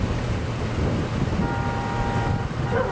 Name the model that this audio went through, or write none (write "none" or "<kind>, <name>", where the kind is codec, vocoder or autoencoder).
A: none